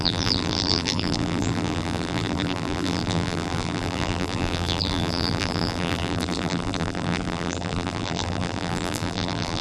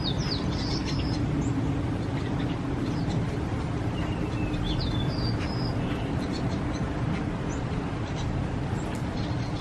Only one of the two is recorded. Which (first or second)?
second